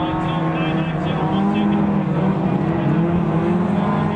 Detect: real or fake real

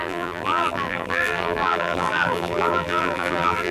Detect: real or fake fake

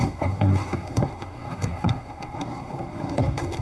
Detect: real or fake fake